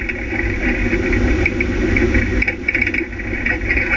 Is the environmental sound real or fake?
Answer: real